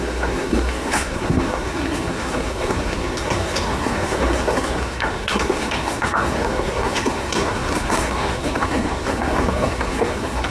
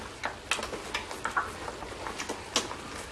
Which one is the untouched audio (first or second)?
second